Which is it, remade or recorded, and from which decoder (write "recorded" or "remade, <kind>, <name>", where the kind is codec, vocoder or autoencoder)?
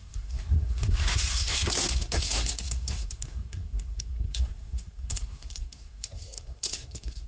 remade, codec, SNAC